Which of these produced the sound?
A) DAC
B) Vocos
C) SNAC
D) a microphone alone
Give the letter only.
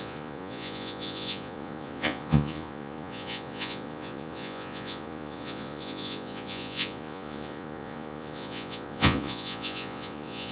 B